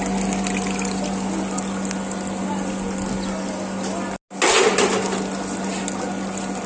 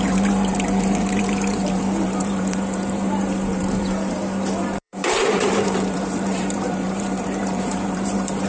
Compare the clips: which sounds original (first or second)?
first